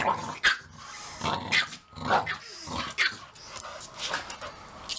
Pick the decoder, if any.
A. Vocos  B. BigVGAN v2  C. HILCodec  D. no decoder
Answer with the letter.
D